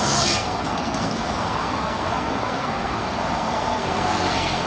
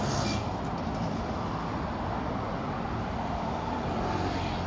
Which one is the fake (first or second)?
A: first